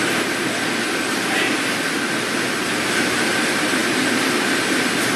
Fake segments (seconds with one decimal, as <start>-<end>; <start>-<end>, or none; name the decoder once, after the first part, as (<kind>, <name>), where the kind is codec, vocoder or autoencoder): none